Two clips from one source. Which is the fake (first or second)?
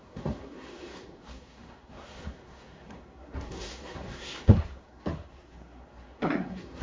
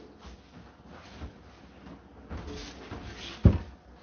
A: first